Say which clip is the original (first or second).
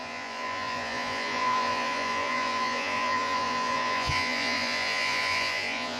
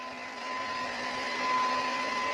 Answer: second